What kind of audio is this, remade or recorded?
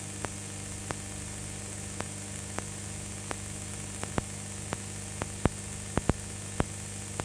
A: recorded